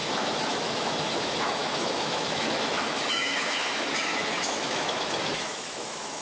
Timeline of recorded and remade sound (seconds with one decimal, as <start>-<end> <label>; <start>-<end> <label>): 0.0-6.2 remade